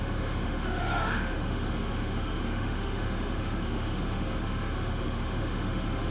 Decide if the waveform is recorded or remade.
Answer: remade